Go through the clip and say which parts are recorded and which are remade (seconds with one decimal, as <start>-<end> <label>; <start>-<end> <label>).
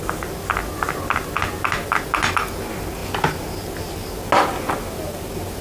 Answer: 0.0-5.6 recorded